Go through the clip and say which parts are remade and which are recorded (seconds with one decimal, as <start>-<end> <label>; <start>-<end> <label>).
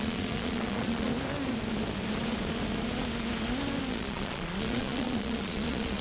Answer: 0.0-1.1 remade; 1.1-3.9 recorded; 3.9-6.0 remade